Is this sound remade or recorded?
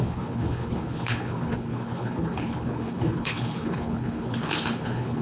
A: remade